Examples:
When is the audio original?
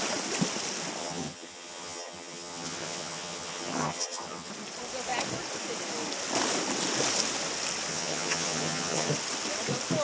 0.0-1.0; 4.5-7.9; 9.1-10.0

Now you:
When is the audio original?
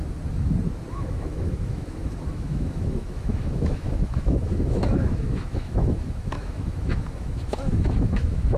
0.0-0.9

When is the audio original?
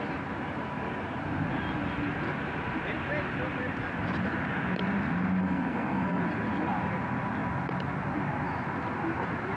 0.0-5.4; 6.2-9.6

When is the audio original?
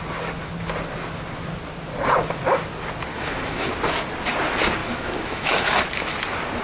0.0-3.1; 3.7-4.8; 5.8-6.6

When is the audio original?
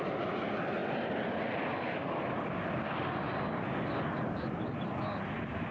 0.0-5.7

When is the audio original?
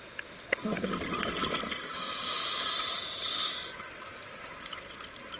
0.0-5.4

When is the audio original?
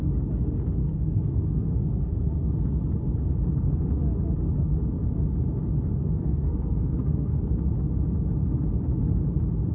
0.0-0.8; 2.5-6.2; 7.4-9.7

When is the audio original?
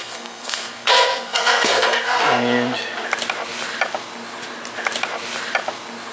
2.2-6.1